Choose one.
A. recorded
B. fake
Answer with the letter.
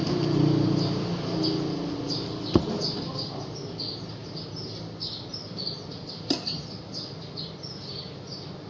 A